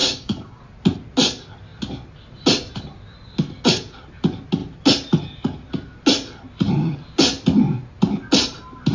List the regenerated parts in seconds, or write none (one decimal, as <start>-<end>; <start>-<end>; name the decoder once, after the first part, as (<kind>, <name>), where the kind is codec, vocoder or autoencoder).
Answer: 0.0-0.6 (codec, DAC)